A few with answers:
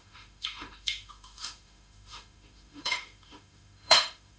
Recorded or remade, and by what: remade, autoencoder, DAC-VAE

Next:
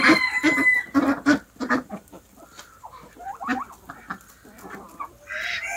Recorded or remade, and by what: recorded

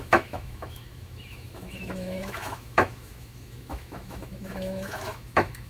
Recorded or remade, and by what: remade, autoencoder, DAC-VAE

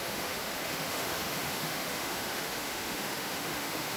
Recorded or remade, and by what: remade, autoencoder, DAC-VAE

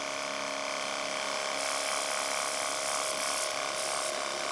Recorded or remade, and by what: recorded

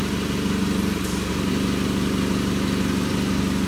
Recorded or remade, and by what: recorded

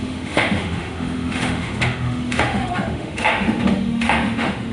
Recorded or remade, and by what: remade, autoencoder, DAC-VAE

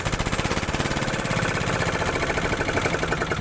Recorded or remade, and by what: recorded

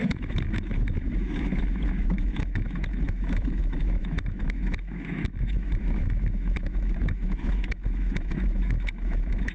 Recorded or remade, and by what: remade, autoencoder, DAC-VAE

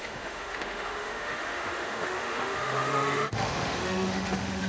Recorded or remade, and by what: remade, autoencoder, DAC-VAE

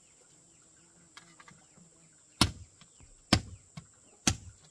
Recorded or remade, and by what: recorded